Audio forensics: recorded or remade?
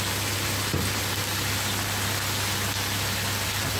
recorded